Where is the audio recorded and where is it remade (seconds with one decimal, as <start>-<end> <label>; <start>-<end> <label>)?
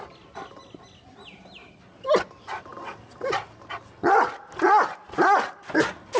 0.0-6.2 recorded